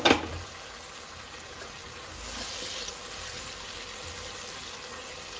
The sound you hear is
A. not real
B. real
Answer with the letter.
B